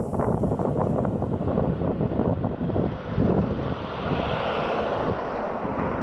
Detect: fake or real fake